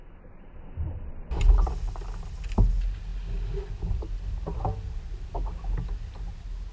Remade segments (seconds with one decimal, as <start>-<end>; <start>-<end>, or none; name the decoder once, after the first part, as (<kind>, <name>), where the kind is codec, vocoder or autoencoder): none